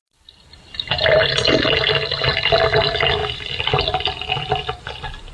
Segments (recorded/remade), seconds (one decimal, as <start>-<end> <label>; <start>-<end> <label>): 0.0-1.3 remade; 1.3-3.2 recorded; 3.2-3.8 remade; 3.8-5.3 recorded